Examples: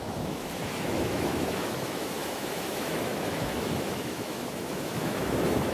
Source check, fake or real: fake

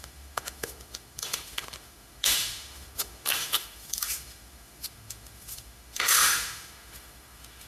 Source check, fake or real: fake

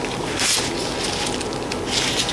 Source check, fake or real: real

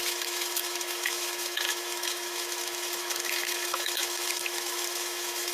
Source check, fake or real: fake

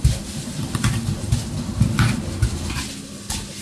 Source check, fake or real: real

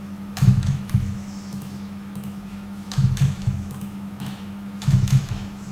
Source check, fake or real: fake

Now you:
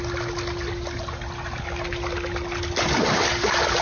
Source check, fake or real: real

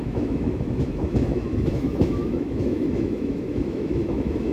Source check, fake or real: fake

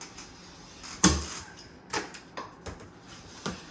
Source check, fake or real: real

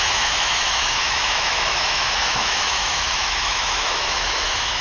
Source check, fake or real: fake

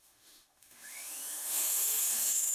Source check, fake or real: fake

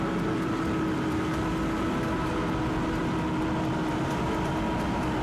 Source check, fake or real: real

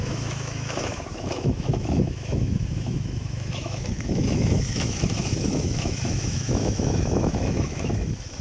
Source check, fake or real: fake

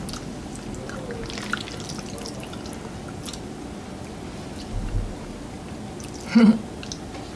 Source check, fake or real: real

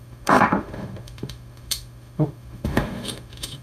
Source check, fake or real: fake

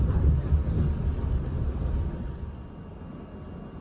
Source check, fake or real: real